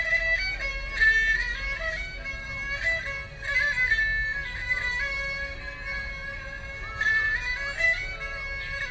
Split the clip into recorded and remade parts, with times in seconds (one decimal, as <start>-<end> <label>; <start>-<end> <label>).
0.0-8.9 recorded

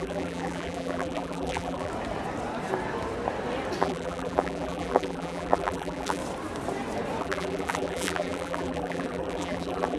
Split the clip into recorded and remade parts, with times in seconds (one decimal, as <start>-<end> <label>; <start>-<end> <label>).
0.0-1.9 remade; 1.9-3.8 recorded; 3.8-6.2 remade; 6.2-7.2 recorded; 7.2-10.0 remade